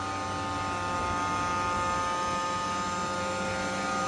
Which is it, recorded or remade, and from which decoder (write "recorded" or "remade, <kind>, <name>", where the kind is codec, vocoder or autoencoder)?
recorded